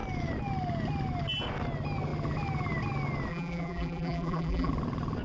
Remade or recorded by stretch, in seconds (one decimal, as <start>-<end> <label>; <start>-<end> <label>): 0.0-3.3 recorded; 3.3-4.7 remade; 4.7-5.2 recorded